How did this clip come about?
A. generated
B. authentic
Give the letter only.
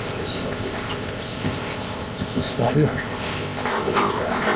A